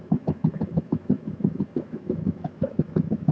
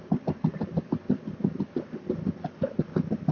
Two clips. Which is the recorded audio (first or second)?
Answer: second